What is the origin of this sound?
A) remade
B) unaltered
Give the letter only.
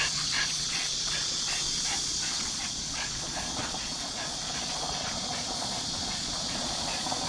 A